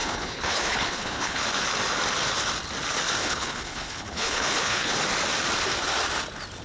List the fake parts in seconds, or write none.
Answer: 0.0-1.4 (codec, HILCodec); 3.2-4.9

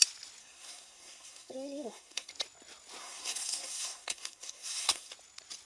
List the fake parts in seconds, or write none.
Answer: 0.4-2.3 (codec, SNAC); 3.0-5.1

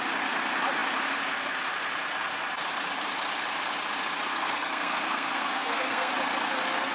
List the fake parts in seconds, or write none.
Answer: 4.3-6.1 (codec, SNAC)

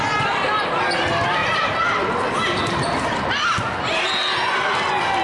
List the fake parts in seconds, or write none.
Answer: none